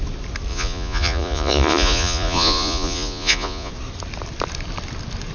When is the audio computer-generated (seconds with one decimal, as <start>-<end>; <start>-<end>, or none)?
0.5-3.7